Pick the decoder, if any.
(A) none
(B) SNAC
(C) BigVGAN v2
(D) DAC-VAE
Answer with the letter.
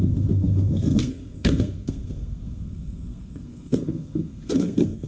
B